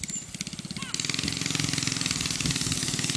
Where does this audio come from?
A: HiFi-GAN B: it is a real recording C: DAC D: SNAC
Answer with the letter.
B